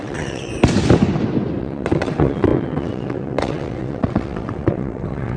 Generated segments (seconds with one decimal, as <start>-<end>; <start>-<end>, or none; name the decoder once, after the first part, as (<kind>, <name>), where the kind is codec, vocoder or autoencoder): 0.0-0.5 (vocoder, WaveNeXt); 1.6-5.4